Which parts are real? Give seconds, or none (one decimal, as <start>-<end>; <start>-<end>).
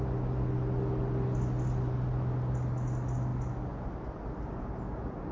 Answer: 0.0-5.3